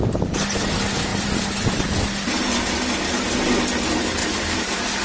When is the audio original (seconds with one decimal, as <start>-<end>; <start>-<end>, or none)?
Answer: 0.0-1.1; 2.3-4.2